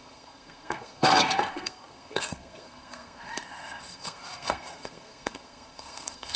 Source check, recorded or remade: remade